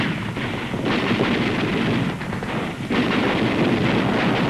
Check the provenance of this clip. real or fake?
real